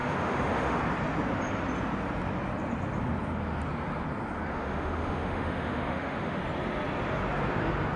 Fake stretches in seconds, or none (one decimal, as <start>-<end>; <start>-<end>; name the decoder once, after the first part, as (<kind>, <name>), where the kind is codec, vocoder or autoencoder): 0.0-0.8 (autoencoder, DAC-VAE); 4.5-6.4